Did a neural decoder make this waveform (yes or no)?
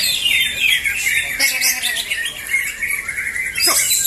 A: no